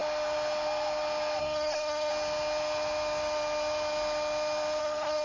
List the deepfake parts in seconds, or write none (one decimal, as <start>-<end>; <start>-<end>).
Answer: 1.4-2.1; 4.8-5.2